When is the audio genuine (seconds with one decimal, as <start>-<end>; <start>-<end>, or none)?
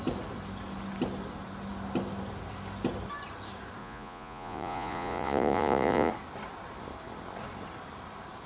0.0-3.8; 6.1-8.5